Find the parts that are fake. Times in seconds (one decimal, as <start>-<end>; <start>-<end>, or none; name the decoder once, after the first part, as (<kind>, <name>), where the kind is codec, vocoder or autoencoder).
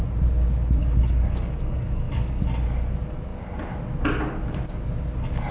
0.8-2.4 (codec, DAC)